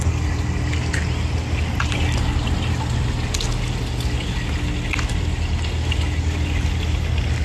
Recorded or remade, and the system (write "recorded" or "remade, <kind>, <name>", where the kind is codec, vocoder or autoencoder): recorded